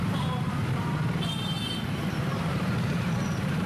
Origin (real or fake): fake